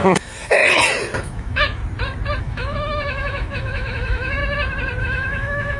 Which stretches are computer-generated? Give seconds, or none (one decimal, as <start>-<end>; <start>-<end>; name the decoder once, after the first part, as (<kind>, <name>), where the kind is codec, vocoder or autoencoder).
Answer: 0.0-0.6 (autoencoder, DAC-VAE); 1.2-1.8; 2.4-4.4; 5.0-5.8